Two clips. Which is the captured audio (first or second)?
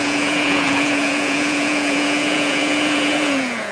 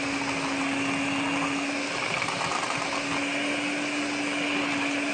second